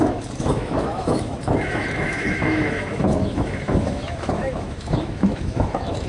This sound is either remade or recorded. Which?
remade